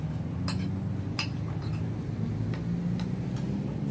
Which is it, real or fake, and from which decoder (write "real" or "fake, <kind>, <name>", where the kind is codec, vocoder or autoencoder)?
real